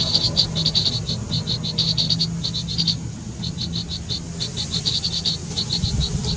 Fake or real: real